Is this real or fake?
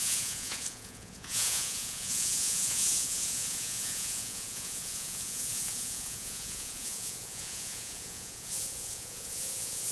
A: fake